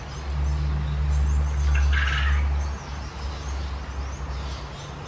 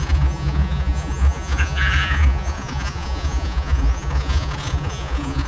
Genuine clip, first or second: first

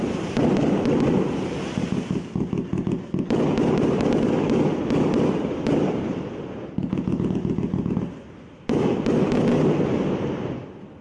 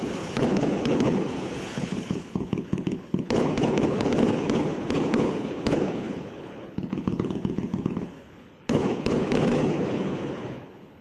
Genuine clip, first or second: first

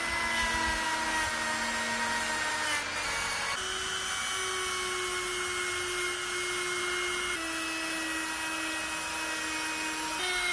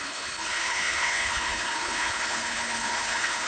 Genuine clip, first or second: first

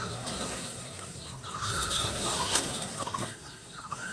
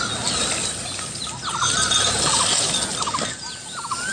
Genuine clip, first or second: second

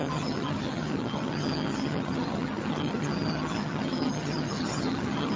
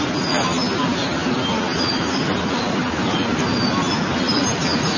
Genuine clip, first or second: second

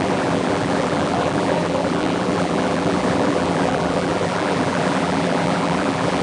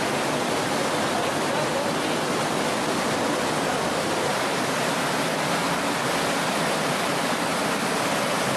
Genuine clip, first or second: second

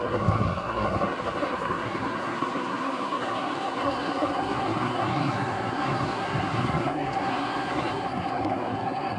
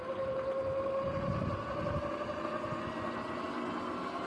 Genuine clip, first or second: second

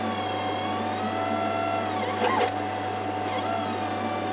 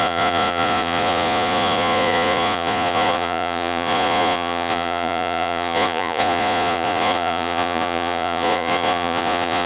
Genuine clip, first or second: first